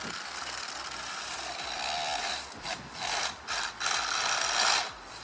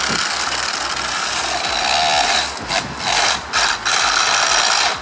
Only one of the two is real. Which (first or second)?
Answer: second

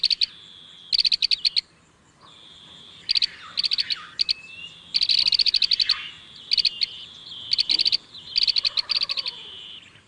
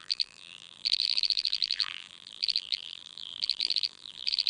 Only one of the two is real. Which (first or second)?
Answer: first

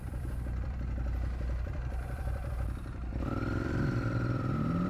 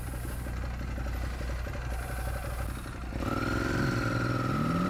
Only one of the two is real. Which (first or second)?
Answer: second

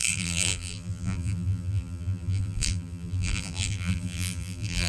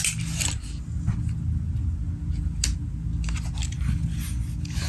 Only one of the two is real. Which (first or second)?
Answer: second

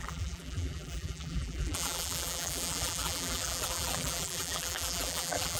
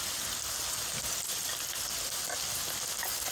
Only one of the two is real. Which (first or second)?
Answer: second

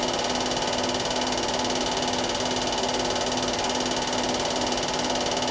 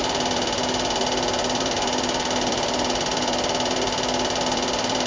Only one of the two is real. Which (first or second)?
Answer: first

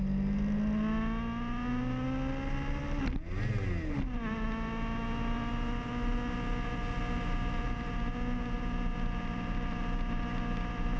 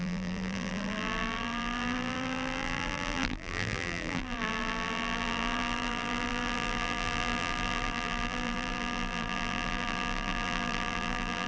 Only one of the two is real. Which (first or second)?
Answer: first